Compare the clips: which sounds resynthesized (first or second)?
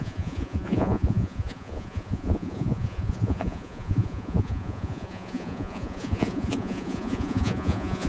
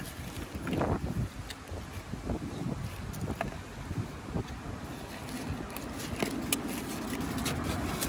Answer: first